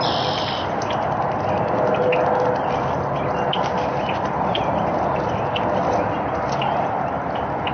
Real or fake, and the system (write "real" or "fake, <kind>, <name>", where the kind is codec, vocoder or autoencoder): real